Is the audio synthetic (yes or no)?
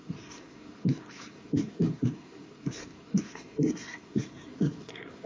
yes